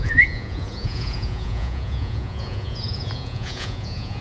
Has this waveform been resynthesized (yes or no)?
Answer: yes